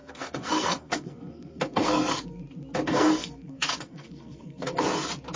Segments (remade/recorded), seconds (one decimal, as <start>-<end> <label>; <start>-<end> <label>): 0.0-2.4 remade; 2.4-2.9 recorded; 2.9-4.8 remade; 4.8-5.4 recorded